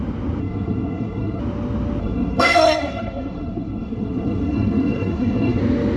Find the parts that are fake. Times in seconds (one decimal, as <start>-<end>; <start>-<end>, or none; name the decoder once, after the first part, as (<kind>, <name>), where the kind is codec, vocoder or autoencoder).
0.4-1.4 (codec, SNAC); 2.0-5.6